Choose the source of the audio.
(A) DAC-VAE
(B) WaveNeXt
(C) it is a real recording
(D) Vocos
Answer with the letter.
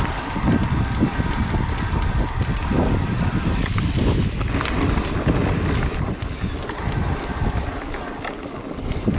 C